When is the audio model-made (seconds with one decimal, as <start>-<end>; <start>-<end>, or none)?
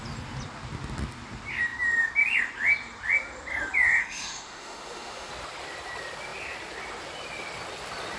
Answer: 4.0-5.3